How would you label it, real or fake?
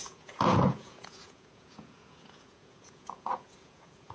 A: fake